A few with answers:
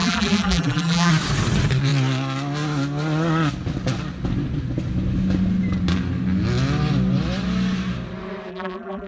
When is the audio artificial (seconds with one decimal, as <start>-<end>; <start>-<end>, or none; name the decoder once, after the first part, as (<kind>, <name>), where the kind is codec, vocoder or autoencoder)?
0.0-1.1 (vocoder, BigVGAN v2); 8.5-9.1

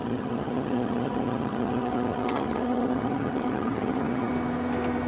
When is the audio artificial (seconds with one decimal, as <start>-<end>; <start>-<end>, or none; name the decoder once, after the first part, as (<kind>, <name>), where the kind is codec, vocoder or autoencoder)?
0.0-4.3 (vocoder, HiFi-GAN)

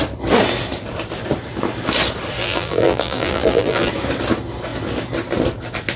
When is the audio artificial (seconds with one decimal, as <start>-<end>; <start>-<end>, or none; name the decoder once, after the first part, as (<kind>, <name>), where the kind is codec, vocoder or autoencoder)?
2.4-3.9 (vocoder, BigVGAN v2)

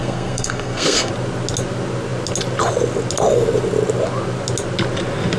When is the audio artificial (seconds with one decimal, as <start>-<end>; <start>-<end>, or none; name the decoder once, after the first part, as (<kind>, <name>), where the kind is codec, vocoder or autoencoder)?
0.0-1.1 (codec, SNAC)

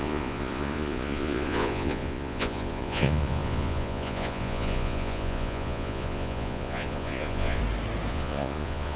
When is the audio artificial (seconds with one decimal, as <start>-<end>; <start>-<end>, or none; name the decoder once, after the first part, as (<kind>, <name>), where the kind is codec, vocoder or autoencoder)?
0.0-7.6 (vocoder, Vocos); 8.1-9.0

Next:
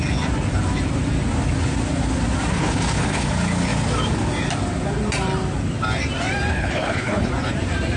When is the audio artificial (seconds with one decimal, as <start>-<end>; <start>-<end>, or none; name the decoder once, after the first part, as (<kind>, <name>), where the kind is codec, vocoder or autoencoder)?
2.5-3.3 (codec, HILCodec); 6.5-7.3

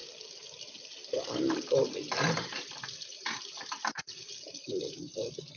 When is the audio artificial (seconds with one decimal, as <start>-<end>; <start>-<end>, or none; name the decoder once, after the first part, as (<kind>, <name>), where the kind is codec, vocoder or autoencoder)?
none